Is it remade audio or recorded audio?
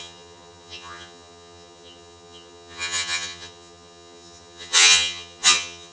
remade